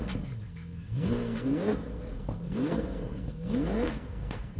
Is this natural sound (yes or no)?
no